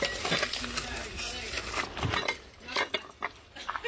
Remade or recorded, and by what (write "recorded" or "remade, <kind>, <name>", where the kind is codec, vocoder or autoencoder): recorded